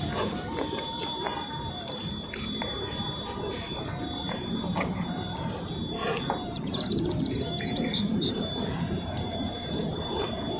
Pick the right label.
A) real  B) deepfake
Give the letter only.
B